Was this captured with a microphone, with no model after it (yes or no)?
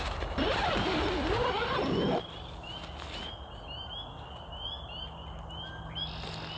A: yes